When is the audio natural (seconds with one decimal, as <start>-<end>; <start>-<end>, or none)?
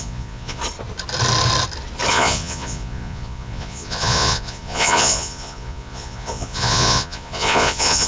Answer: 0.6-2.1